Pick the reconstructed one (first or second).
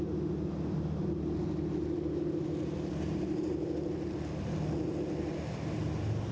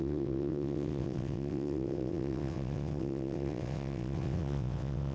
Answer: second